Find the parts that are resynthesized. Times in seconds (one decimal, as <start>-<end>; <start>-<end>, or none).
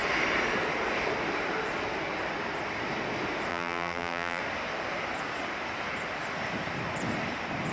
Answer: 3.5-4.4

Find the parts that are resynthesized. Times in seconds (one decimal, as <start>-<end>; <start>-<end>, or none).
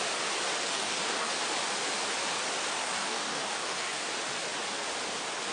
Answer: 0.6-1.3; 2.8-4.1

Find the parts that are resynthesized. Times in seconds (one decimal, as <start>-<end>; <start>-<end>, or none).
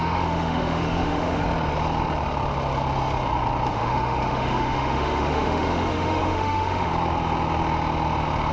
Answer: 0.0-1.4; 3.7-6.9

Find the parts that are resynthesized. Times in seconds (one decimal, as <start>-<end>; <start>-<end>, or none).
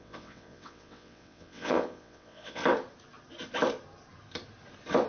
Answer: 0.0-2.6